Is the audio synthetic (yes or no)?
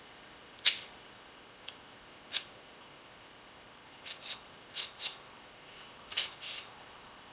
yes